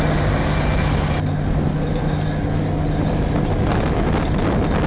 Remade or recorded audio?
recorded